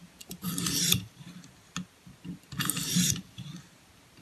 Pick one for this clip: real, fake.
real